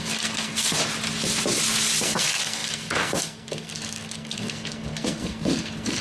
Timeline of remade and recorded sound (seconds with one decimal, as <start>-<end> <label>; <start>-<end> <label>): 0.0-0.8 remade; 0.8-2.0 recorded; 2.0-6.0 remade